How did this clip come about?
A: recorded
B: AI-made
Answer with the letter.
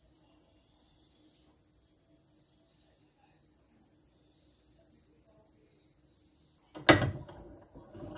A